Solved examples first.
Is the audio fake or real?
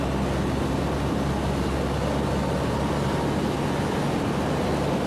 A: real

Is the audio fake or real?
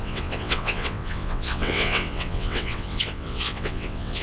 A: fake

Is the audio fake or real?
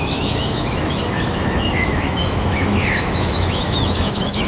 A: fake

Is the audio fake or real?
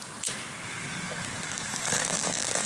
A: fake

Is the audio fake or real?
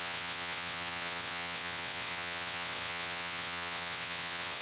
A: fake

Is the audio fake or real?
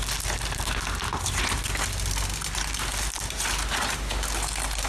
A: real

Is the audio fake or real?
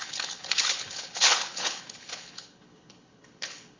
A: fake